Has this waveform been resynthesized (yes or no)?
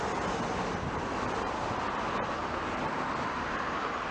no